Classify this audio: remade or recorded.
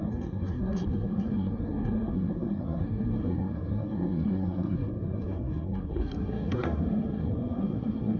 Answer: remade